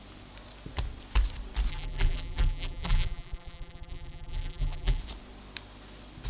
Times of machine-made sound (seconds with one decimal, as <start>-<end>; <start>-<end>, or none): 1.7-5.0